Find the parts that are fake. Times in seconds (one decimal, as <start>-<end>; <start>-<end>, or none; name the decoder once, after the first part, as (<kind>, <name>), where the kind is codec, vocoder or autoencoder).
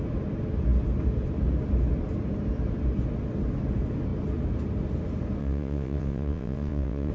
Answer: 5.4-7.1 (vocoder, WaveNeXt)